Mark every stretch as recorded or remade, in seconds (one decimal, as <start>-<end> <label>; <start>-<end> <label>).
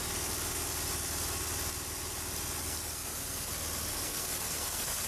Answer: 0.0-2.6 recorded; 2.6-3.5 remade; 3.5-3.9 recorded; 3.9-5.1 remade